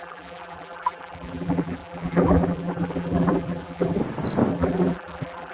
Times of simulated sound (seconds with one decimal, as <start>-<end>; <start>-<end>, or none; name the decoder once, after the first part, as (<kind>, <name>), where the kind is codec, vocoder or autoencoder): 0.0-4.0 (vocoder, BigVGAN v2); 4.5-5.5